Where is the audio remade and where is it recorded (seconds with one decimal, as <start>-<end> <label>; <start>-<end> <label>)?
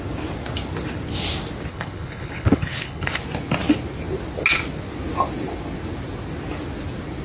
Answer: 0.0-1.7 recorded; 1.7-3.2 remade; 3.2-7.2 recorded